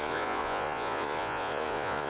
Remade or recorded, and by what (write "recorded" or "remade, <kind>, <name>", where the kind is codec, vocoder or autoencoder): remade, vocoder, Vocos